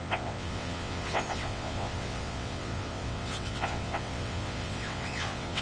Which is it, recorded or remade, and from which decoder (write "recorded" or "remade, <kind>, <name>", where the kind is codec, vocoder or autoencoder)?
remade, vocoder, WaveNeXt